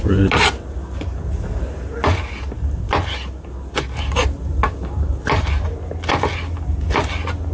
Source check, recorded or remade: recorded